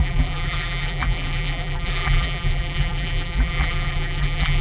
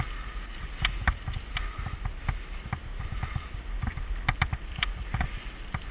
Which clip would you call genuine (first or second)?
second